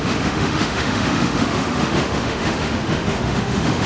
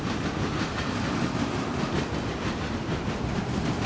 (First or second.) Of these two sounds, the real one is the second